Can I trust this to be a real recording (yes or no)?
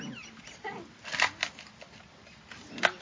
yes